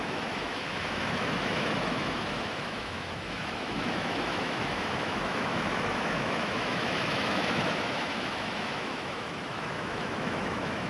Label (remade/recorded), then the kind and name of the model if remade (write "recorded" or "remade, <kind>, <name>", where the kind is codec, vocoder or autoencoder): remade, autoencoder, DAC-VAE